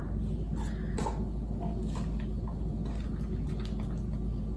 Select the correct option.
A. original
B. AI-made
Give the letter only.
A